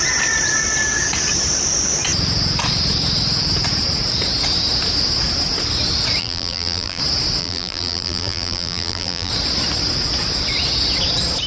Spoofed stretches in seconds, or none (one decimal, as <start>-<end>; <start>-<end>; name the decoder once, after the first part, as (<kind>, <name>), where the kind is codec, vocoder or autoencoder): 6.2-7.0 (vocoder, BigVGAN v2); 7.4-9.3